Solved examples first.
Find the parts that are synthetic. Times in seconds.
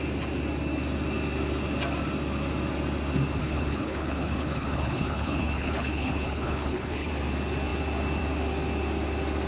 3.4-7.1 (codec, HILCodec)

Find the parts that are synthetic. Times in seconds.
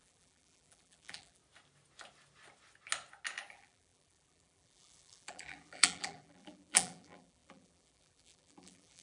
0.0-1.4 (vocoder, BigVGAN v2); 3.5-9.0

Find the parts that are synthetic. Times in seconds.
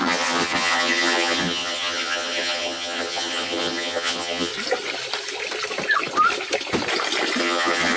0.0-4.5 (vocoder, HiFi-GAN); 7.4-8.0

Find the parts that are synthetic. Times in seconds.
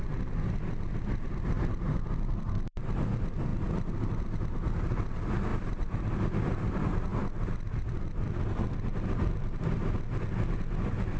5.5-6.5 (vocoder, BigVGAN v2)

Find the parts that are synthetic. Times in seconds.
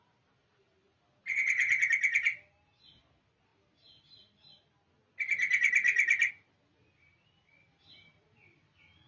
1.3-1.8 (vocoder, HiFi-GAN)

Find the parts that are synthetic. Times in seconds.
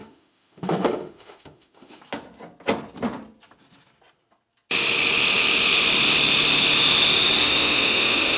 0.0-2.0 (autoencoder, DAC-VAE); 7.4-8.4